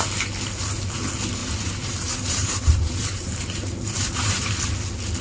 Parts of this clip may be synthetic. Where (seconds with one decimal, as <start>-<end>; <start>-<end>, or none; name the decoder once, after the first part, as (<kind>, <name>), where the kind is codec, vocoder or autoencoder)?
1.4-4.5 (vocoder, BigVGAN v2)